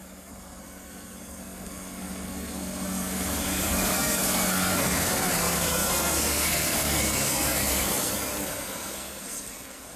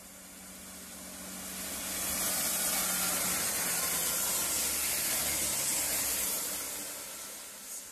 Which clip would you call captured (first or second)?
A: second